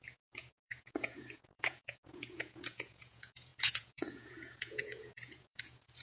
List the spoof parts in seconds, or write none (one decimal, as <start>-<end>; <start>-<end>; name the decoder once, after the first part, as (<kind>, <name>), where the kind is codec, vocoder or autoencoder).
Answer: 0.0-6.0 (vocoder, Vocos)

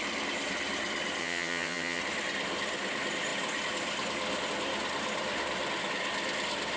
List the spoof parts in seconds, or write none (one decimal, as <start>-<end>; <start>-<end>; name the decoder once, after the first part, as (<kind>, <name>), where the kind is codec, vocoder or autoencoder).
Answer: 1.2-2.0 (vocoder, HiFi-GAN)

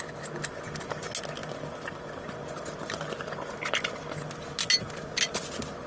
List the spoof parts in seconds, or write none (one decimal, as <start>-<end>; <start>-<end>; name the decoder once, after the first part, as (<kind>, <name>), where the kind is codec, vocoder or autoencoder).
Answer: none

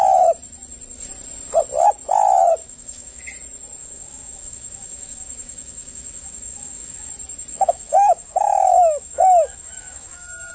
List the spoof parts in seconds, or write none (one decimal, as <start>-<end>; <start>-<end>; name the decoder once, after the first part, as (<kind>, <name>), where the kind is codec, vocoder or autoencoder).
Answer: 2.6-3.2 (autoencoder, DAC-VAE); 3.8-7.1; 7.5-10.5

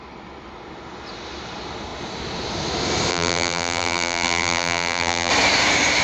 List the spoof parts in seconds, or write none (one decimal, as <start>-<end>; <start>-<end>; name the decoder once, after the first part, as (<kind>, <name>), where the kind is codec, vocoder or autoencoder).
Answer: 3.1-5.3 (vocoder, BigVGAN v2)

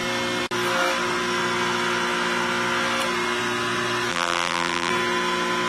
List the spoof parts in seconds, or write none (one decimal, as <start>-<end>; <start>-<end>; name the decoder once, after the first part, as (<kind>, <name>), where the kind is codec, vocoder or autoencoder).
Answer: 4.1-4.9 (vocoder, BigVGAN v2)

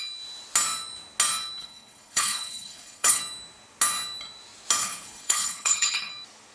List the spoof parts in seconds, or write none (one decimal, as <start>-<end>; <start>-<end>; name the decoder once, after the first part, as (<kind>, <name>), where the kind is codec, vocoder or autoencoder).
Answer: 1.6-3.2 (codec, HILCodec); 4.8-6.1